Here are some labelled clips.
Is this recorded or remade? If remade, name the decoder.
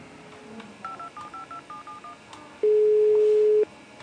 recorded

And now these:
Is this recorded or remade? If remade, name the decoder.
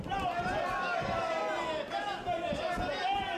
recorded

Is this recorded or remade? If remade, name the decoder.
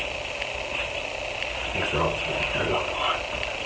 recorded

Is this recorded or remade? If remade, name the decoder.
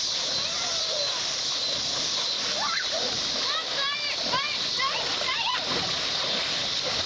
recorded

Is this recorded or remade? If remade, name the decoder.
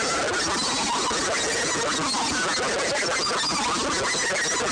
recorded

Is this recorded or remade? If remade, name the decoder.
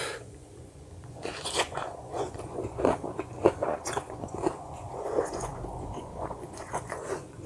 remade, vocoder, Vocos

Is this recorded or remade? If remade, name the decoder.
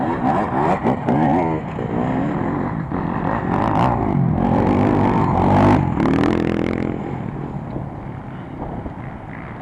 recorded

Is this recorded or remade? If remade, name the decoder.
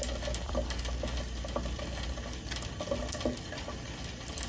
recorded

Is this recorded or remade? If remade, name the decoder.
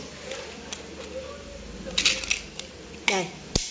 recorded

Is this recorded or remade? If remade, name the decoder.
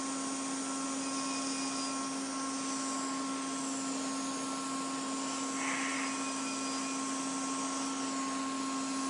recorded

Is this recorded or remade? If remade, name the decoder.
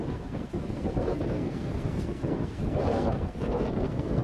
remade, codec, SNAC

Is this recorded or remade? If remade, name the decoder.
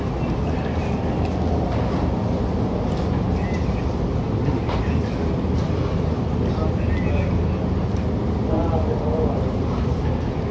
recorded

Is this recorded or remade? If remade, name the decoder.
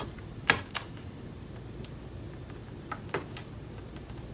recorded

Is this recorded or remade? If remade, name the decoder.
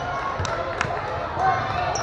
recorded